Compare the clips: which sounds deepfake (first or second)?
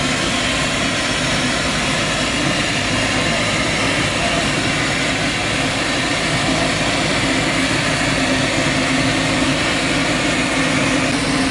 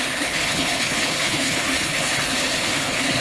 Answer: second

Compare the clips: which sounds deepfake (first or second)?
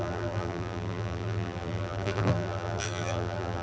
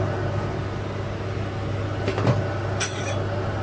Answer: first